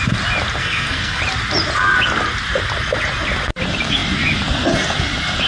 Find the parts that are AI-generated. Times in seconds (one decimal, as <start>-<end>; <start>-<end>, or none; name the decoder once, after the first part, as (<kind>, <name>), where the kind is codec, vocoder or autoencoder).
0.6-1.2 (codec, SNAC)